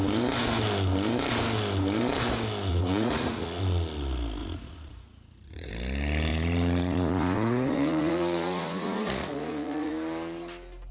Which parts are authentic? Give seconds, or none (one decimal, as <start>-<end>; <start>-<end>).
0.0-2.7; 3.6-4.4; 5.7-6.3; 9.9-10.9